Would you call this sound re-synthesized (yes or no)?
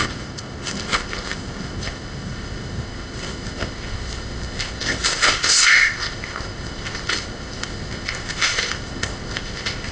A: yes